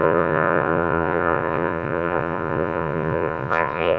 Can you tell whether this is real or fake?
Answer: fake